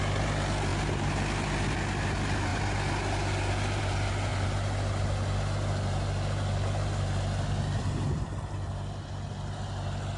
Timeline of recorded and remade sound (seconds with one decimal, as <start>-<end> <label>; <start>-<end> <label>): 0.0-10.2 recorded

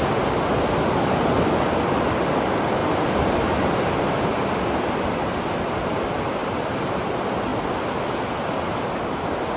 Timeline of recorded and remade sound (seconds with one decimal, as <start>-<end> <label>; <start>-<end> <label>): 0.0-6.4 recorded; 6.4-6.9 remade; 6.9-7.5 recorded; 7.5-8.3 remade; 8.3-9.6 recorded

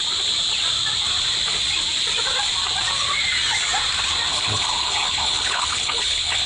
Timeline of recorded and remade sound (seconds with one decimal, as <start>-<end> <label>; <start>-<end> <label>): 0.0-4.3 recorded; 4.3-6.5 remade

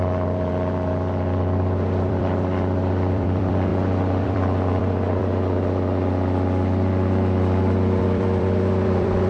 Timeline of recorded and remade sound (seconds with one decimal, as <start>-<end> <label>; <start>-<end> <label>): 0.0-5.2 remade; 5.2-8.0 recorded; 8.0-9.3 remade

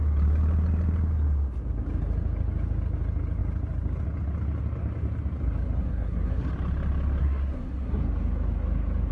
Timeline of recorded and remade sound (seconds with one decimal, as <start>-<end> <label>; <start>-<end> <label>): 0.0-5.8 recorded; 5.8-6.5 remade; 6.5-7.2 recorded; 7.2-8.0 remade; 8.0-9.1 recorded

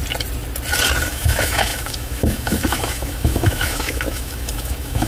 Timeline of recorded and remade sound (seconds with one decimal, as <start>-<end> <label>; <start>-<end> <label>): 0.0-1.1 recorded; 1.1-5.1 remade

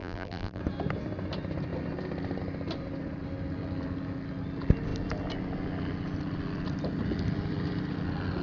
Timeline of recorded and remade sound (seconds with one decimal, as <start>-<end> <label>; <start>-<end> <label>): 0.0-0.6 remade; 0.6-8.4 recorded

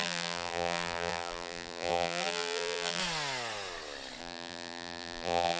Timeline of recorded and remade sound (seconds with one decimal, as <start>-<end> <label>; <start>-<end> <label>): 0.0-3.0 remade; 3.0-4.2 recorded; 4.2-5.6 remade